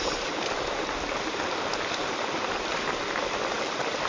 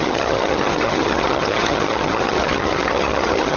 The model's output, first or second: second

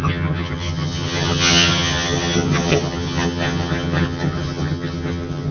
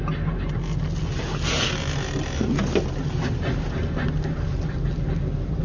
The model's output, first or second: first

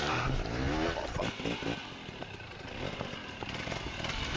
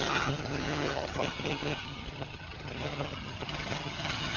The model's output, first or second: second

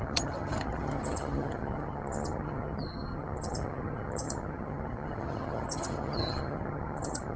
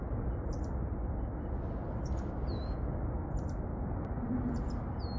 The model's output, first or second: first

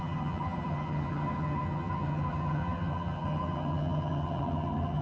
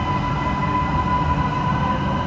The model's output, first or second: first